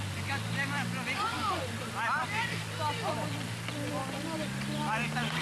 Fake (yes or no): yes